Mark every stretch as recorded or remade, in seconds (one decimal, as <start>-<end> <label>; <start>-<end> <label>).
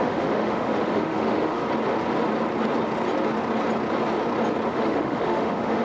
0.0-1.6 remade; 1.6-4.7 recorded; 4.7-5.8 remade